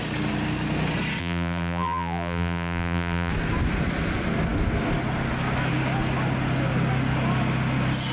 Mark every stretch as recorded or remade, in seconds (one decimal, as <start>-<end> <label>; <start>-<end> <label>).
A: 0.0-1.2 recorded; 1.2-3.3 remade; 3.3-8.1 recorded